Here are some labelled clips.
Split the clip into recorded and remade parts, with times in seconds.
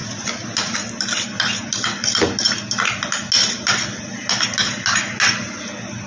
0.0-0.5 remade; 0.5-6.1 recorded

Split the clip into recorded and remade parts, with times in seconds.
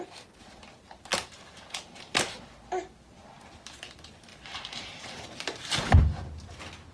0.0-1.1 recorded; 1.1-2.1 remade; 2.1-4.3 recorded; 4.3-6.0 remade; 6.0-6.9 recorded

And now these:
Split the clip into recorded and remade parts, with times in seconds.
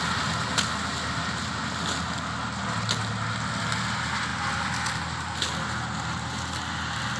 0.0-7.2 recorded